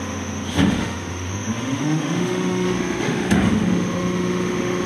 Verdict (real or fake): fake